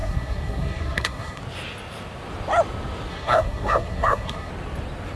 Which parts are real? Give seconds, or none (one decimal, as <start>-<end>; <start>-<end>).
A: 1.4-3.1; 4.5-5.2